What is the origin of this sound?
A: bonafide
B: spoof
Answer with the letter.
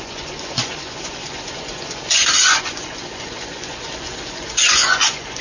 B